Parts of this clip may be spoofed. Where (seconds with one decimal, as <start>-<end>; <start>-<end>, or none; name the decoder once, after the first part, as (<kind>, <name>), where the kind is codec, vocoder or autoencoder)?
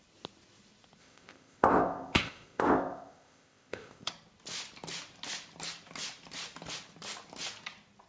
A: 1.0-4.1 (codec, ZipCodec)